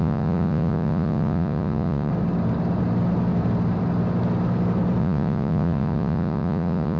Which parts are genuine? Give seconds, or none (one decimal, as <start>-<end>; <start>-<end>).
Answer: 2.1-5.0